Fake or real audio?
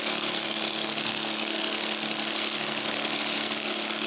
fake